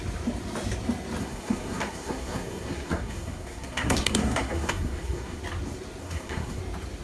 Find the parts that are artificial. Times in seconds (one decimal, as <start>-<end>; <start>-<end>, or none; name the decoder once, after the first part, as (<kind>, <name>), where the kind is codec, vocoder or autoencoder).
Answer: 1.2-5.4 (codec, SNAC); 6.0-6.6